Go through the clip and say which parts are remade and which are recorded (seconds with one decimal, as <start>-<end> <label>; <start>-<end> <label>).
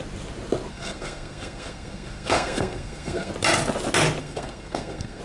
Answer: 0.0-0.7 recorded; 0.7-3.3 remade; 3.3-4.2 recorded; 4.2-5.2 remade